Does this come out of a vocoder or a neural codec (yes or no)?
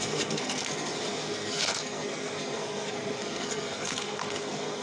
yes